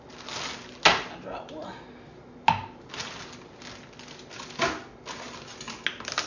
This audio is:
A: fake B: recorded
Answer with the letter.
B